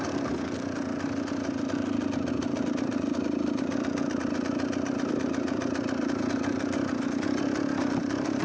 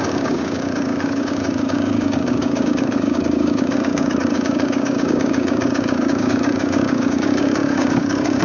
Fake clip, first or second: second